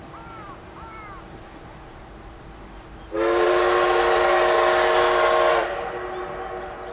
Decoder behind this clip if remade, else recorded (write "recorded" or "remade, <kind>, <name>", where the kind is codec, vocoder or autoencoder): recorded